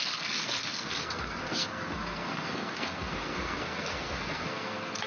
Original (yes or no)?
no